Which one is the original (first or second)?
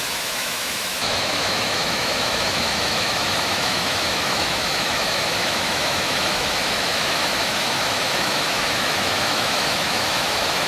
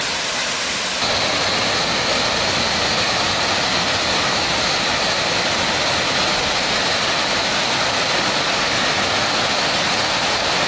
second